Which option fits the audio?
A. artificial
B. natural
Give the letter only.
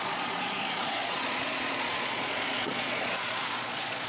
A